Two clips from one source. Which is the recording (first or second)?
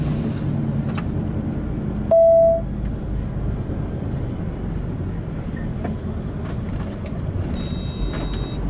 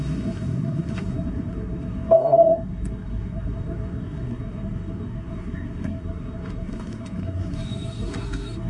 first